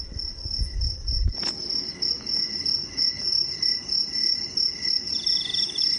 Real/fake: real